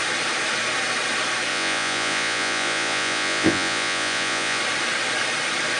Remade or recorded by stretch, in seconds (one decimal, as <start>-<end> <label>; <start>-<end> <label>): 0.0-1.5 recorded; 1.5-4.6 remade; 4.6-5.8 recorded